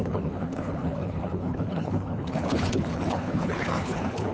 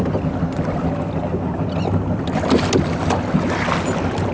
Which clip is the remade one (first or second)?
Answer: first